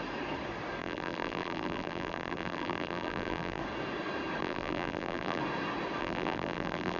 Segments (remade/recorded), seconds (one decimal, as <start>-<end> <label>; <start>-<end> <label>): 0.0-0.8 recorded; 0.8-3.6 remade; 3.6-4.4 recorded; 4.4-5.4 remade; 5.4-6.0 recorded; 6.0-7.0 remade